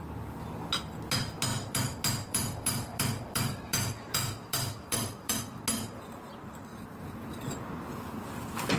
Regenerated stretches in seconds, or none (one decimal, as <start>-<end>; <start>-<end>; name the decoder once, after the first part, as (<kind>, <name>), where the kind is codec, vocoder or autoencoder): 1.5-5.4 (vocoder, BigVGAN v2); 6.7-7.5